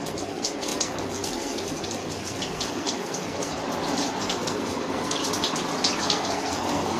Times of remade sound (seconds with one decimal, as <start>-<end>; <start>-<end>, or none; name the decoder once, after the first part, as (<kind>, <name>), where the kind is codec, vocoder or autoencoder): 0.0-3.6 (codec, SNAC); 4.2-5.2; 6.0-7.0